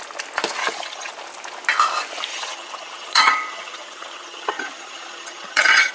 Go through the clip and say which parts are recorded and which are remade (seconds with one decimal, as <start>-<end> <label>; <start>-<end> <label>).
0.0-0.6 recorded; 0.6-1.1 remade; 1.1-2.3 recorded; 2.3-5.9 remade

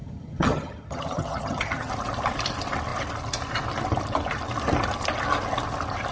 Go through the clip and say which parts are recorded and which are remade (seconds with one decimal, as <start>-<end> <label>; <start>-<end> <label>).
0.0-1.9 remade; 1.9-6.1 recorded

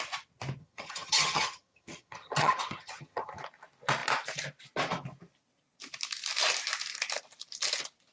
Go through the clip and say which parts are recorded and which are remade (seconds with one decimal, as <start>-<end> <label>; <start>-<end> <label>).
0.0-0.6 recorded; 0.6-3.4 remade; 3.4-8.1 recorded

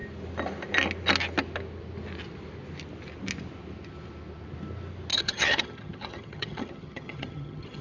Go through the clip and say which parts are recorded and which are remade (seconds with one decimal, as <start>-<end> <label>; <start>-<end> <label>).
0.0-5.1 recorded; 5.1-7.8 remade

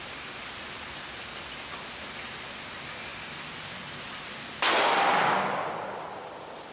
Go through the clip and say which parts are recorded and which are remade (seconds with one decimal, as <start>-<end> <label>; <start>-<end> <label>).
0.0-6.7 recorded

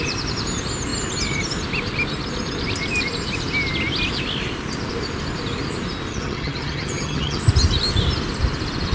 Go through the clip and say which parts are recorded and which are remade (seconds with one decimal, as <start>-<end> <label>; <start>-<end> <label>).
0.0-6.1 recorded; 6.1-7.4 remade; 7.4-8.9 recorded

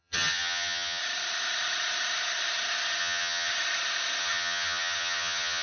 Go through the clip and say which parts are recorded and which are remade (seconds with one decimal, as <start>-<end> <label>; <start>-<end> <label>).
0.0-1.0 remade; 1.0-3.0 recorded; 3.0-3.5 remade; 3.5-4.2 recorded; 4.2-5.6 remade

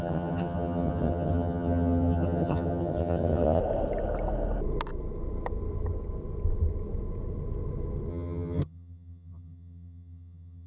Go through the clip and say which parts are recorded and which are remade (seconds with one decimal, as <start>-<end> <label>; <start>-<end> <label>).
0.0-3.6 remade; 3.6-8.1 recorded; 8.1-10.7 remade